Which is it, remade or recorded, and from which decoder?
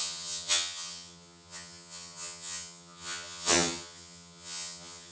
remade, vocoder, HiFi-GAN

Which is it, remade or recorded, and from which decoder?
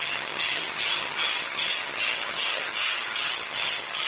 remade, vocoder, HiFi-GAN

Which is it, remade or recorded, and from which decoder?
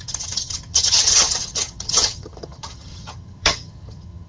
remade, vocoder, HiFi-GAN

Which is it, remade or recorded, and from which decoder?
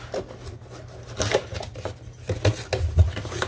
recorded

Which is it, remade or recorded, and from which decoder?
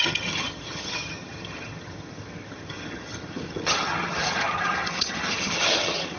remade, vocoder, HiFi-GAN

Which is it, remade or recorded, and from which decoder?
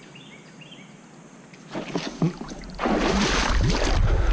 recorded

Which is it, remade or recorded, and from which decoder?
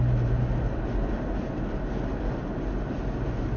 recorded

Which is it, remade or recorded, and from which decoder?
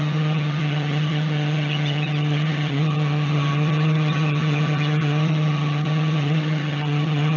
remade, vocoder, HiFi-GAN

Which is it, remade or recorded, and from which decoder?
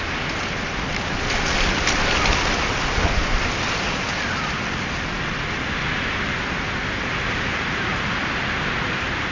recorded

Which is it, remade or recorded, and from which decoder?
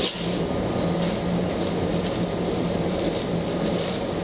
recorded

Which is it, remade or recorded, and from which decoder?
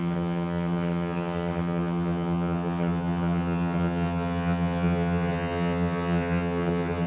remade, vocoder, HiFi-GAN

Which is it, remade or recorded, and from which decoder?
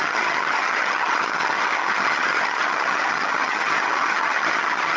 remade, vocoder, HiFi-GAN